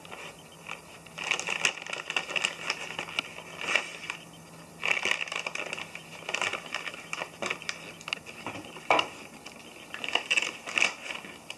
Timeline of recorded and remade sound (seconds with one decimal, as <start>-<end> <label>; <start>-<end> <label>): 0.0-11.6 recorded